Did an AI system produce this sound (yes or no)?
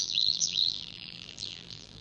yes